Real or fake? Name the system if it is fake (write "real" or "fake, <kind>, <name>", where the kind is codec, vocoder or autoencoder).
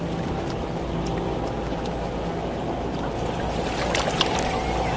real